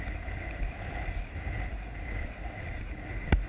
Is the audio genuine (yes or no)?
yes